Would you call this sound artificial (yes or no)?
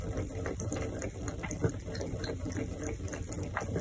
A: no